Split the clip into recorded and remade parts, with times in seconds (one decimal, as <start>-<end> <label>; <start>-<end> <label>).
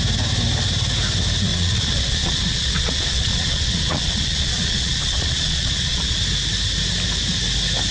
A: 0.0-1.5 recorded; 1.5-6.2 remade; 6.2-7.9 recorded